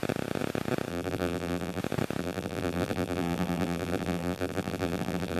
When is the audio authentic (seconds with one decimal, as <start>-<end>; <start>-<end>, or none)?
0.0-0.9; 1.8-2.2